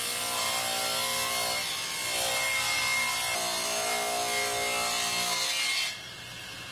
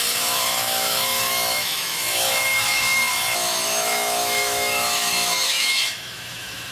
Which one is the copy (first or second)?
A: second